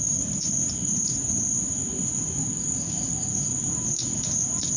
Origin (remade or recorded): remade